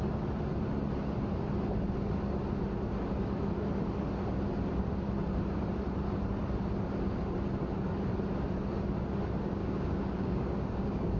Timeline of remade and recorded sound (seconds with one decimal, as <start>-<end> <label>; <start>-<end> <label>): 0.0-9.6 recorded; 9.6-11.2 remade